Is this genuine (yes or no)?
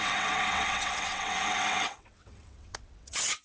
no